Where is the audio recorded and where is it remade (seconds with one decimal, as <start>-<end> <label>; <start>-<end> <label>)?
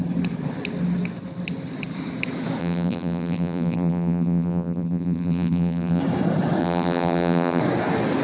0.0-2.6 recorded; 2.6-6.0 remade; 6.0-6.6 recorded; 6.6-7.6 remade; 7.6-8.2 recorded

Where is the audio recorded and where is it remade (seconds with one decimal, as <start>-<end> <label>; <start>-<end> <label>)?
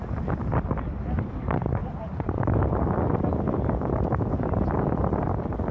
0.0-1.8 remade; 1.8-2.4 recorded; 2.4-5.7 remade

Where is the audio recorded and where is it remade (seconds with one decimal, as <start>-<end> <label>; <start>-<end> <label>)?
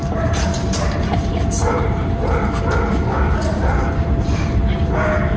0.0-2.6 remade; 2.6-5.4 recorded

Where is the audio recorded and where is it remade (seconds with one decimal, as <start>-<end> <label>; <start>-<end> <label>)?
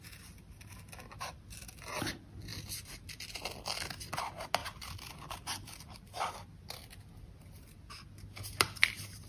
0.0-4.6 recorded; 4.6-6.3 remade; 6.3-9.3 recorded